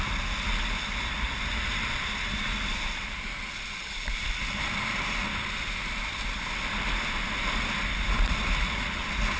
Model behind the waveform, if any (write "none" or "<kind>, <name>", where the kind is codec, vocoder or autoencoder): none